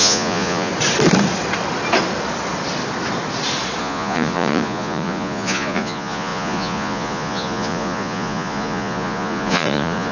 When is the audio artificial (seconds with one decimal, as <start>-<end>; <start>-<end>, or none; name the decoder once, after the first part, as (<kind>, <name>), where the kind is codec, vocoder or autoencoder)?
0.0-0.7 (vocoder, Vocos); 3.8-10.1